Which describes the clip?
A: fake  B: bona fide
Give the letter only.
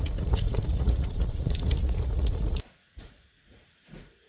A